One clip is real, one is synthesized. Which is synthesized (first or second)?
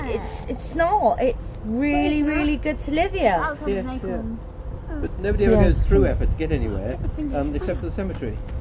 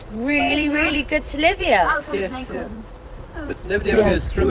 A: second